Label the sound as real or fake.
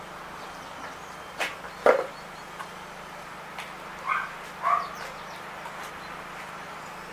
real